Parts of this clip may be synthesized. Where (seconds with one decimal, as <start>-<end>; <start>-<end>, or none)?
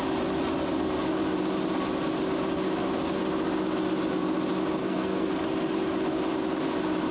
4.8-5.3